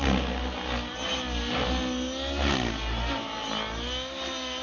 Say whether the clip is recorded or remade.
recorded